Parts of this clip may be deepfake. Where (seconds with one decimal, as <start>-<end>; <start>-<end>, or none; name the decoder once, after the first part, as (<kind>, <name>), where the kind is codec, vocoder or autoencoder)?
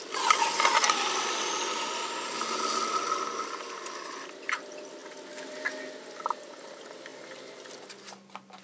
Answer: none